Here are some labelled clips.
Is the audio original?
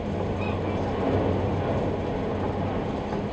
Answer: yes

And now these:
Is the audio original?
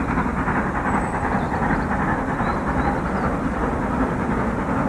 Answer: yes